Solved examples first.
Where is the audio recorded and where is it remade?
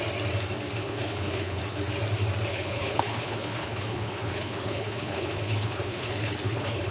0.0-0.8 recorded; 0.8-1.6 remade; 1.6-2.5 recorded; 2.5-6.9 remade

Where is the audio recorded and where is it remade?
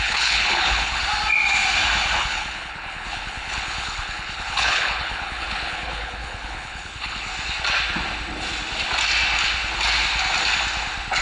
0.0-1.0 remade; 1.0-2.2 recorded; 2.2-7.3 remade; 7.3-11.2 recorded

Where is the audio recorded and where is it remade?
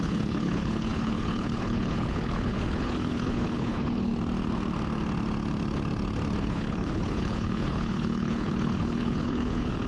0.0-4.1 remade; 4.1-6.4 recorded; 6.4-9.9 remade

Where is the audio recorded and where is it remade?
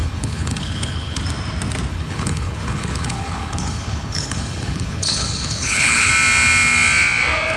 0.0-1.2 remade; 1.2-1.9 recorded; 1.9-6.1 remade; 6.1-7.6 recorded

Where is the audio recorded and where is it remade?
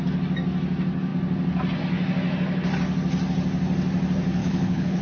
0.0-4.4 recorded; 4.4-5.0 remade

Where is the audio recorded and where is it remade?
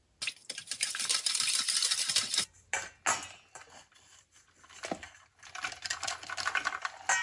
0.0-7.2 recorded